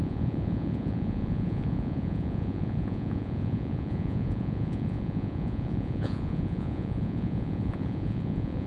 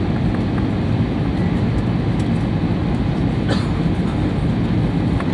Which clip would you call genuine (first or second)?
second